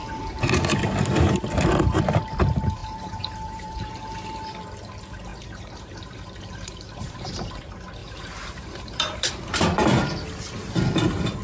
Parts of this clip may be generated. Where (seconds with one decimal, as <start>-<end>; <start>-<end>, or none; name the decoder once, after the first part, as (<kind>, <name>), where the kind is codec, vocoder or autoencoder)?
2.8-3.9 (vocoder, BigVGAN v2); 5.3-7.6; 8.0-9.3